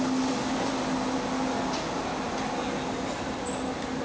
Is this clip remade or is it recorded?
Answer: recorded